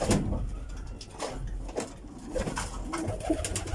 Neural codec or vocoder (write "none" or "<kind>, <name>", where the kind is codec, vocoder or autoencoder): none